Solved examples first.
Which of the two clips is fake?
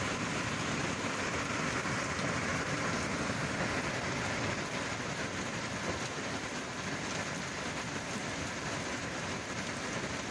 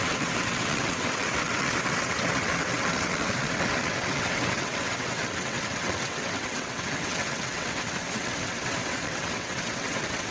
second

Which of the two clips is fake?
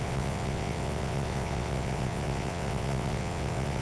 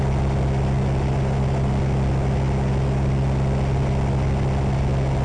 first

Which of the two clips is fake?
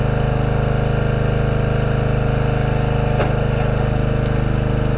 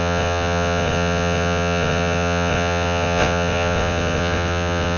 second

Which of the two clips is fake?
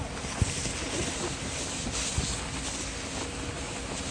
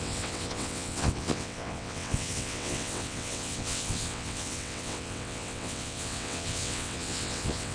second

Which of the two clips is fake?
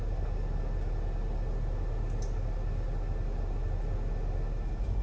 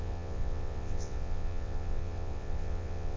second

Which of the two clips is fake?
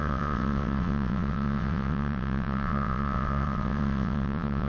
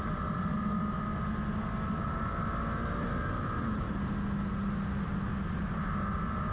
first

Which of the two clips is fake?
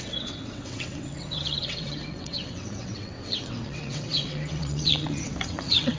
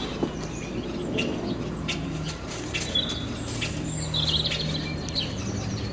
first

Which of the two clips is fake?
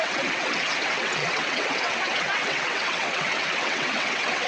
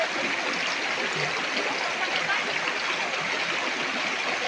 first